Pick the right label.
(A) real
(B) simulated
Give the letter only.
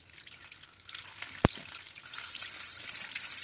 A